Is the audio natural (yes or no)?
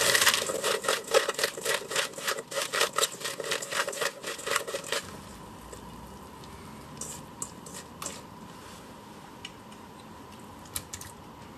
yes